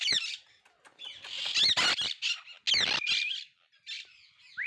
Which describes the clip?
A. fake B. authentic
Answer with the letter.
B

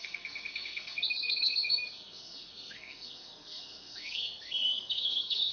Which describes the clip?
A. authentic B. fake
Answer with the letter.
B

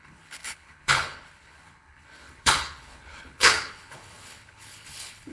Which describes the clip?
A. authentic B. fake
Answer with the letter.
B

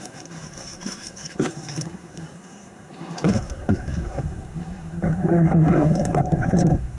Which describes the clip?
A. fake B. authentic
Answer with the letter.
A